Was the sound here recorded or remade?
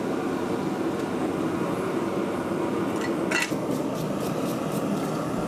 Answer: recorded